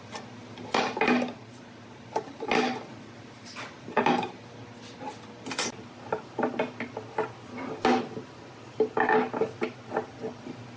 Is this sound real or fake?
real